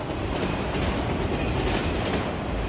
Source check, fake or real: real